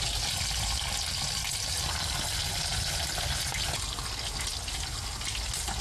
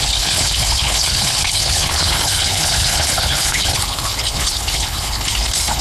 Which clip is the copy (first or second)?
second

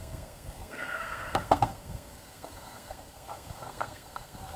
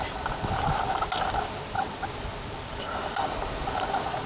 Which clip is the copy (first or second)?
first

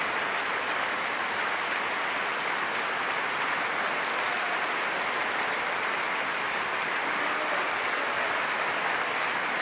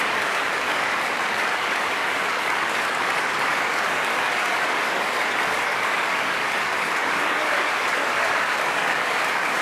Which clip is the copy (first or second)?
second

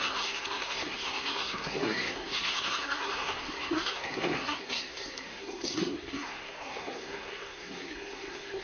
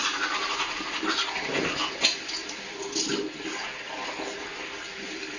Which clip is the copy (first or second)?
first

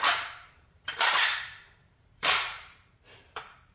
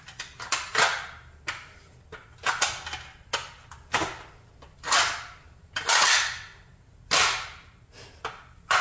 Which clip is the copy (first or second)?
first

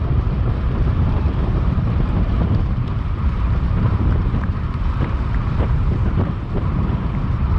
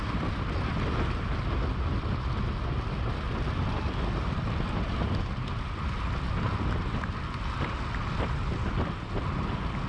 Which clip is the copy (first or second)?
first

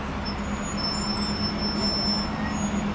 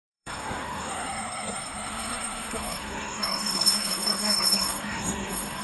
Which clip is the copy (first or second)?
second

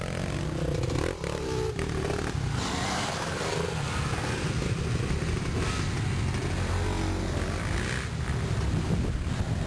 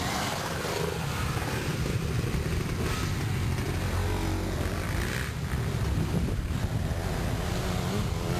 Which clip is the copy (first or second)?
second